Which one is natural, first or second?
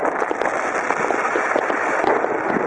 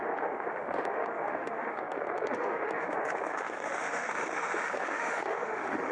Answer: first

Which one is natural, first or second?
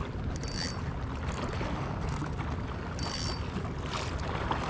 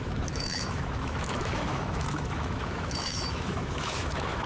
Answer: first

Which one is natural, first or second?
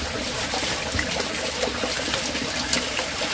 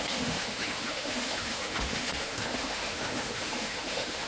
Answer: first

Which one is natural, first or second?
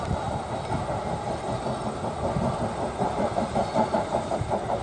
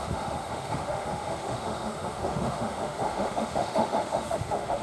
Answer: first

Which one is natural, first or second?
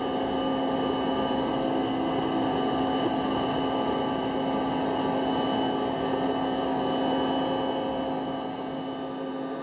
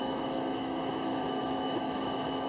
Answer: first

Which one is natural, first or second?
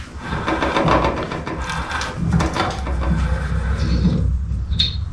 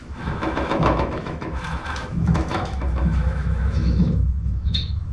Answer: first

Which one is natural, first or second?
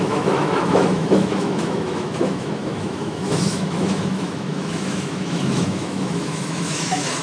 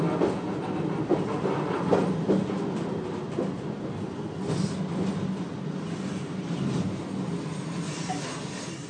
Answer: second